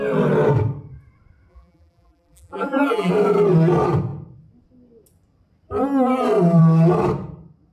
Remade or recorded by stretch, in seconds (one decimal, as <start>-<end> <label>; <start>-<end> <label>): 0.0-1.5 recorded; 1.5-3.1 remade; 3.1-7.7 recorded